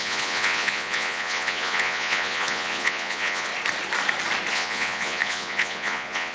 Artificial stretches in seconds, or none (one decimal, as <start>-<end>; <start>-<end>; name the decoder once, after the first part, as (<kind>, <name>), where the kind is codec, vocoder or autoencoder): 0.0-3.5 (vocoder, Vocos); 4.5-6.3